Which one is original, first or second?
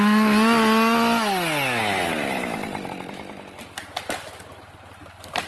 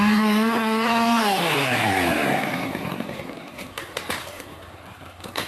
first